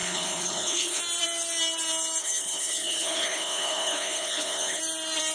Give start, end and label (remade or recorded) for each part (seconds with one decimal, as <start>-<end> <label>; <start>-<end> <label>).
0.0-1.0 remade; 1.0-2.2 recorded; 2.2-4.8 remade; 4.8-5.3 recorded